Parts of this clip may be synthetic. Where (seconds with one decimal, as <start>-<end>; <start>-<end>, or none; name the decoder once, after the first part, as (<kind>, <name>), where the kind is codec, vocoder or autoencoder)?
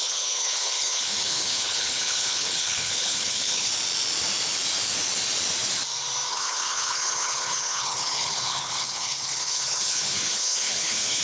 0.0-3.7 (codec, HILCodec); 6.3-11.2